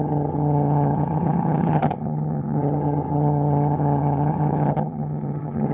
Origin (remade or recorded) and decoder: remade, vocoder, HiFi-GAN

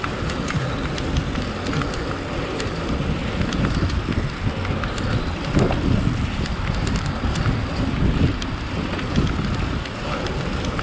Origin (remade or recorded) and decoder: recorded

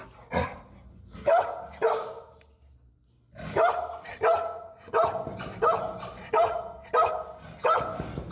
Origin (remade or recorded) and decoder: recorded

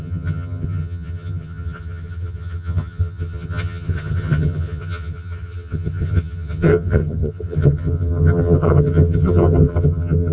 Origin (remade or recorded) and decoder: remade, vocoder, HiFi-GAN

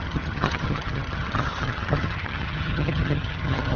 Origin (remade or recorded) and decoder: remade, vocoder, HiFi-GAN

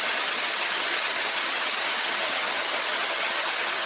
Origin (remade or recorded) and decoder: remade, vocoder, HiFi-GAN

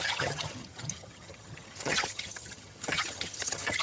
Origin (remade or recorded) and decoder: remade, vocoder, HiFi-GAN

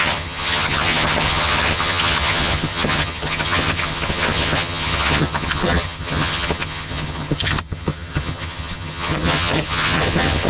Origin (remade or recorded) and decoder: remade, vocoder, HiFi-GAN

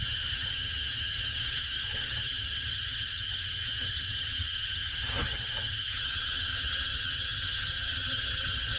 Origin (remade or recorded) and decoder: remade, vocoder, HiFi-GAN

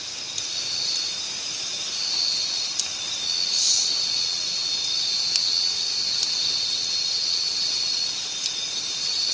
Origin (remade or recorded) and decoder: recorded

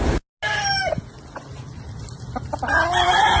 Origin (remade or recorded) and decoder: recorded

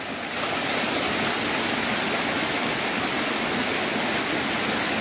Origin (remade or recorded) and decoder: recorded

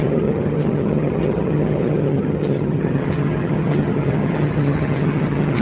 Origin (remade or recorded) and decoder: remade, vocoder, HiFi-GAN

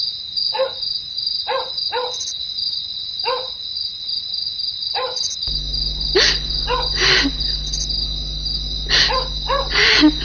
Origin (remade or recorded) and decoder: recorded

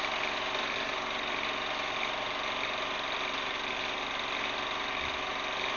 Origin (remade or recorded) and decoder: recorded